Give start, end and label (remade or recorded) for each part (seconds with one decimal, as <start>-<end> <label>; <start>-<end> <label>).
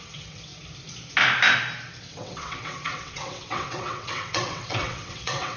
0.0-0.5 remade; 0.5-2.0 recorded; 2.0-5.6 remade